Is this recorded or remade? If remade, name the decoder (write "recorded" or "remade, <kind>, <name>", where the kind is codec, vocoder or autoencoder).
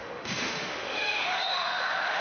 remade, autoencoder, DAC-VAE